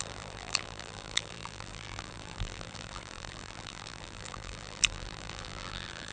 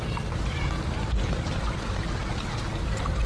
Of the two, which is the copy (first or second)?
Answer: first